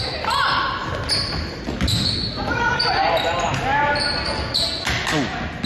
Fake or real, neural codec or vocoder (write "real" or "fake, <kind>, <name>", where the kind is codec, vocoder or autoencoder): real